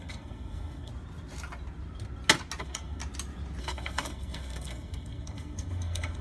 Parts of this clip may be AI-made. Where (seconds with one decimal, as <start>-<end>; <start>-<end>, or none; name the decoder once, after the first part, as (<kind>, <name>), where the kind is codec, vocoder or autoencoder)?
0.0-0.9 (codec, SNAC); 2.6-3.0; 3.6-6.2